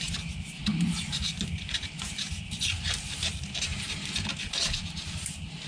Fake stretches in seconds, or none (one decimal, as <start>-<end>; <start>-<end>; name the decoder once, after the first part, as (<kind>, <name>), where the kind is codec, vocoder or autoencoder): none